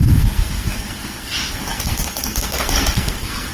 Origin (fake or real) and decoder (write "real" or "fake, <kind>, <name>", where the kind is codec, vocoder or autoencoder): fake, codec, SNAC